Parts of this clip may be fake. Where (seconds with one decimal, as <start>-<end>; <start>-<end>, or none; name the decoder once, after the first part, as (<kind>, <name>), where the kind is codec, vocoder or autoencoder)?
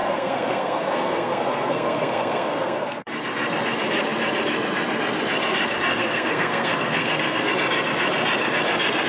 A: 0.0-3.1 (codec, SNAC); 5.9-7.5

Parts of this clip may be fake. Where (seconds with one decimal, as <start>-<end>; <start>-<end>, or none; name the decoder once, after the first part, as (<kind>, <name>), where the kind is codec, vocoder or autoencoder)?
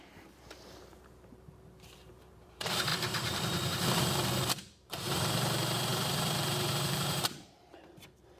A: 0.0-8.4 (vocoder, BigVGAN v2)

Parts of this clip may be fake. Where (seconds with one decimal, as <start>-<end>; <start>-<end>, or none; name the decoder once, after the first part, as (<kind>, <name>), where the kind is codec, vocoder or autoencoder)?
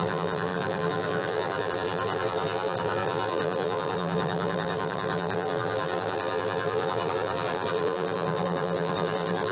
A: 0.0-9.5 (vocoder, BigVGAN v2)